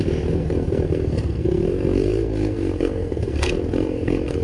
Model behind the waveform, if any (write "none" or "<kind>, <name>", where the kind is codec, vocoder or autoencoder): codec, SNAC